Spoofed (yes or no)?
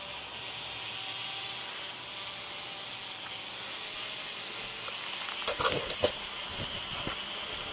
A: no